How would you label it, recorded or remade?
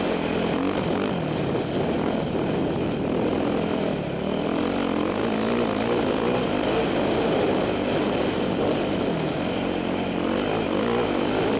recorded